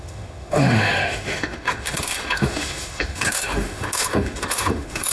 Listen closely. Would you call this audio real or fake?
fake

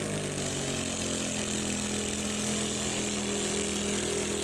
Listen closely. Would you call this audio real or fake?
real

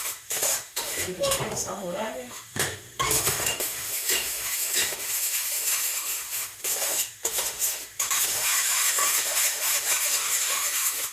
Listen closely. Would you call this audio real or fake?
fake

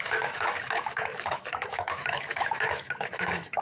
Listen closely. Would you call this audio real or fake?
fake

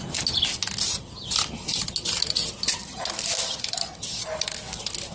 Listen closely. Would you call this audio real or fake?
real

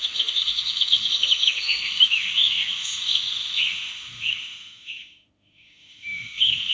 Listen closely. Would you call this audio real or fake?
fake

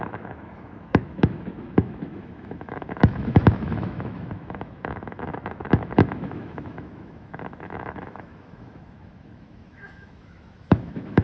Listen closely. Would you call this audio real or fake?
fake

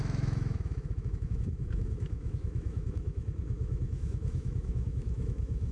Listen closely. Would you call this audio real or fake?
fake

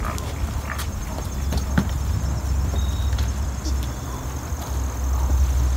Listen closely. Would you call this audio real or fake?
real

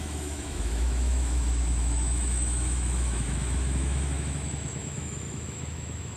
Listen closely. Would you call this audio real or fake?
fake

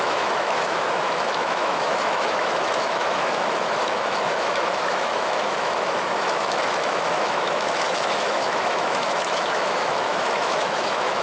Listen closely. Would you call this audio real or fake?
fake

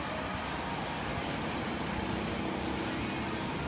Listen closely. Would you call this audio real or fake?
real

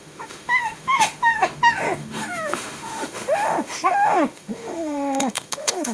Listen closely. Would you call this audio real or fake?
fake